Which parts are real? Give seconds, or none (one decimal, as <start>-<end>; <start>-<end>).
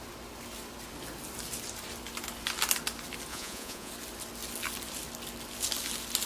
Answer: 0.0-3.3; 3.9-6.3